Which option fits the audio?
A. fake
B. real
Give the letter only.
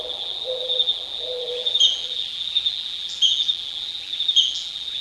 A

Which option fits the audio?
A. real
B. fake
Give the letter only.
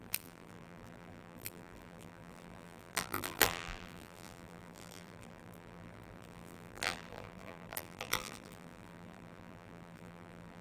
B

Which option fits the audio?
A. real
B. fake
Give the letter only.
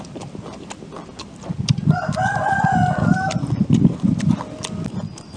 A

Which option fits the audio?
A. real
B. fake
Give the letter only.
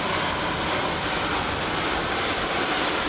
B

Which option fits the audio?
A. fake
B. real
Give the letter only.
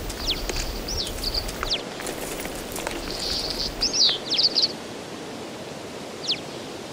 B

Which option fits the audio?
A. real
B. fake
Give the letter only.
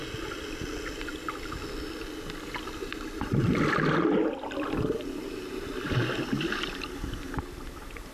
A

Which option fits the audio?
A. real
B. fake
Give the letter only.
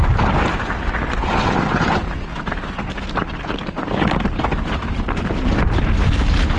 A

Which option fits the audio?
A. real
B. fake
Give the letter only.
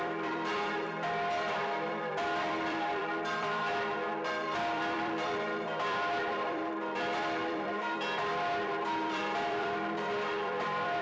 B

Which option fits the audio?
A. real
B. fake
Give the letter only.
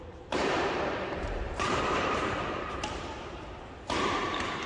B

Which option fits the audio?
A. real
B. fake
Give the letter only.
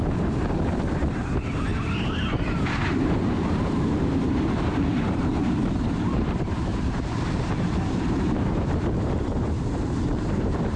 B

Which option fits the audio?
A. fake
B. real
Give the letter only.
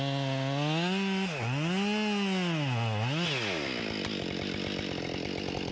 B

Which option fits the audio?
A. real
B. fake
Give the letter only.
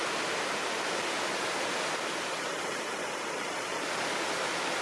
A